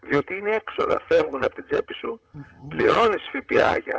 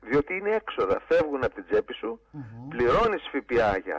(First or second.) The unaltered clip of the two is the second